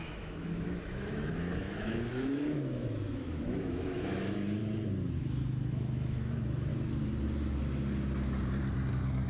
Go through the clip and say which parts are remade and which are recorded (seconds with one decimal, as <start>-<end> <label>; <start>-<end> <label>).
0.0-4.6 remade; 4.6-5.2 recorded; 5.2-6.7 remade; 6.7-8.9 recorded; 8.9-9.3 remade